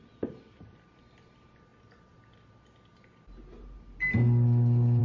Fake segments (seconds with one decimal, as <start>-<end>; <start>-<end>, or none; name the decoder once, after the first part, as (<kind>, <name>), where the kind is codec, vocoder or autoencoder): none